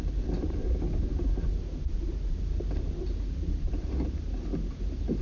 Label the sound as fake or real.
real